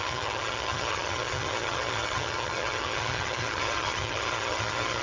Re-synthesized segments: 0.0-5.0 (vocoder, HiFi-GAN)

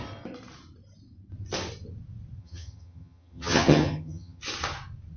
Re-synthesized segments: 2.4-4.4 (vocoder, HiFi-GAN)

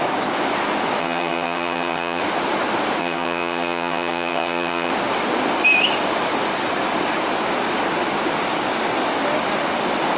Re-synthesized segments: 1.0-2.2 (vocoder, HiFi-GAN); 3.0-4.9

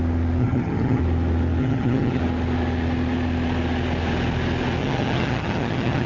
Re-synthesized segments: 0.4-1.0 (vocoder, HiFi-GAN); 1.6-2.2; 4.8-6.1

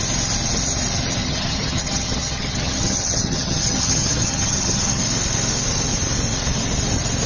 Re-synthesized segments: 1.2-5.0 (vocoder, HiFi-GAN)

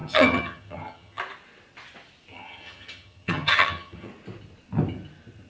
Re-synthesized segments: 0.0-1.2 (vocoder, HiFi-GAN); 2.3-4.1

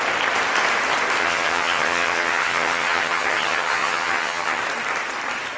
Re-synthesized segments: 1.2-4.6 (vocoder, HiFi-GAN)

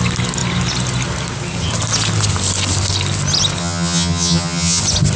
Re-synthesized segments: 3.6-4.8 (vocoder, HiFi-GAN)